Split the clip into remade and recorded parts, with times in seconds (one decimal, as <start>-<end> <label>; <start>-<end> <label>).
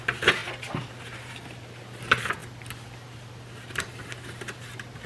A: 0.0-5.1 recorded